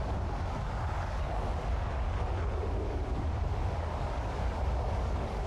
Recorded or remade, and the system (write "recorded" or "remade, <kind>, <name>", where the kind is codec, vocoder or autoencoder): remade, codec, DAC